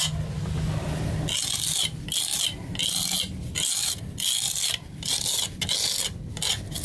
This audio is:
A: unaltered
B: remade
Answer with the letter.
A